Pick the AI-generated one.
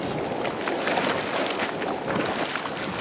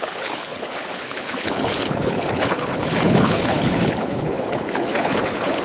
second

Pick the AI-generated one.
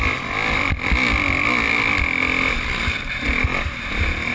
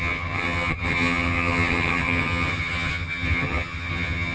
second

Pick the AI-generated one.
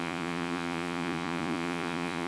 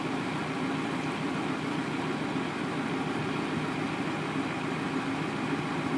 first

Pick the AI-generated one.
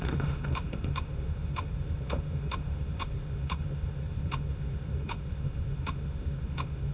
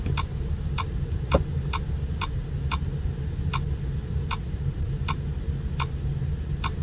first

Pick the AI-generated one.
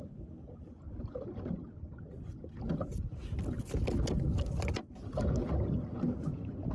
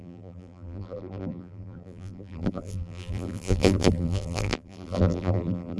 second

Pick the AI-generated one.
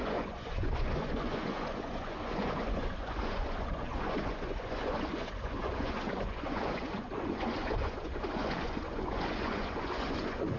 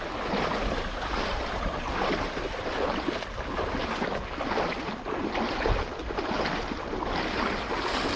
first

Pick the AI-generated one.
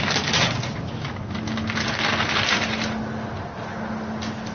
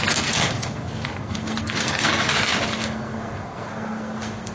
second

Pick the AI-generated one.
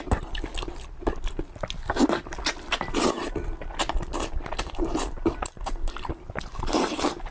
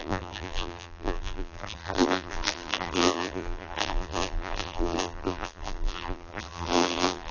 second